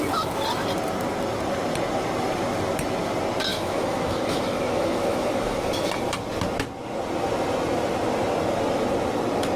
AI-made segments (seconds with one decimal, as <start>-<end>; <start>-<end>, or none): 3.5-5.9